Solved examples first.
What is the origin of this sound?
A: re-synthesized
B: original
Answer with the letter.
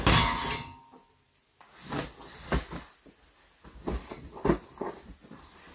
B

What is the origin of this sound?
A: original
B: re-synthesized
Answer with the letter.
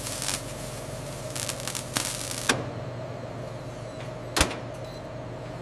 A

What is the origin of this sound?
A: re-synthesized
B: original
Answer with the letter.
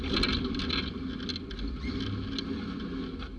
B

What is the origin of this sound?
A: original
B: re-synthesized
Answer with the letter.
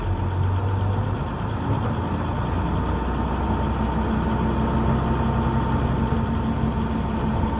A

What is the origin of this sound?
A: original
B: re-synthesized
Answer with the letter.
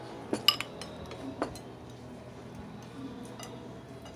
A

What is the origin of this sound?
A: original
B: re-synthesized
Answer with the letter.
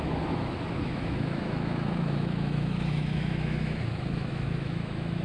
B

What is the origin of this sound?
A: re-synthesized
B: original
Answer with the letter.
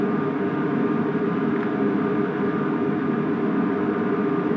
B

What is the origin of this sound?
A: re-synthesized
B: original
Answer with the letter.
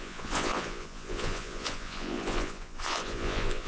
A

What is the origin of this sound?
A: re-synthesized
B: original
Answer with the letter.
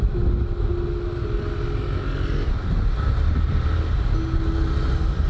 B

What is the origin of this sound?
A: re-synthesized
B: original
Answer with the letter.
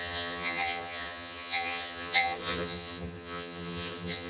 A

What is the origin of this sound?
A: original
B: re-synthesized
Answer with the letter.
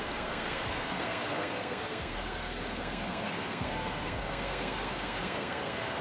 B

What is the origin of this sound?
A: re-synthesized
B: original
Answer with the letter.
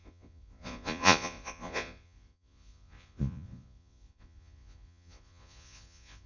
A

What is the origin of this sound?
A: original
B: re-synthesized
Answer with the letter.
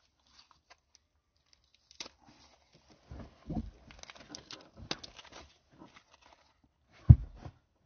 A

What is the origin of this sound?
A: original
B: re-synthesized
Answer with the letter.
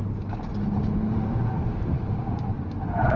B